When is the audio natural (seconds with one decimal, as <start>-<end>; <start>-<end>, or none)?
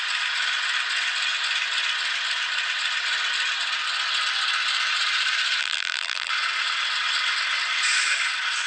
0.0-5.6; 6.3-8.7